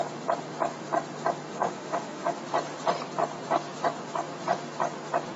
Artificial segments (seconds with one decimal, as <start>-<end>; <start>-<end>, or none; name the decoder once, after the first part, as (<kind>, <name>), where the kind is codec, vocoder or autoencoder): 1.5-2.4 (autoencoder, DAC-VAE)